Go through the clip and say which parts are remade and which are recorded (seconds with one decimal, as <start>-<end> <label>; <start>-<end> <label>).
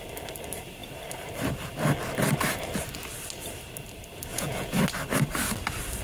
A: 0.0-4.3 recorded; 4.3-4.8 remade; 4.8-6.0 recorded